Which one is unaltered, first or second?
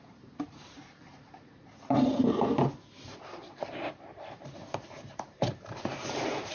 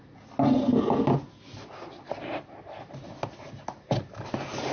second